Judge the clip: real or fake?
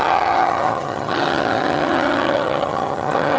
fake